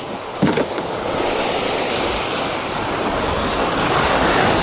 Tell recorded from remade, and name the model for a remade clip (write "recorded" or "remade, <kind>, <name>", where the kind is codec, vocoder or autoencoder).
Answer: remade, codec, DAC